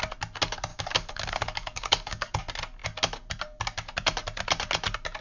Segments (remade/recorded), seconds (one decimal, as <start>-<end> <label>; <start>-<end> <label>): 0.0-0.7 recorded; 0.7-2.4 remade; 2.4-5.2 recorded